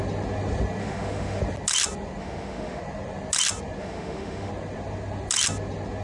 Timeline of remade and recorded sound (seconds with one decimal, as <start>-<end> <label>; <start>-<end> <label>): 0.0-0.8 recorded; 0.8-1.4 remade; 1.4-2.2 recorded; 2.2-2.8 remade; 2.8-3.8 recorded; 3.8-4.5 remade; 4.5-6.0 recorded